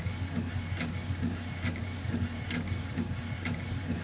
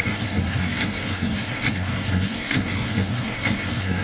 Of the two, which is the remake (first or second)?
second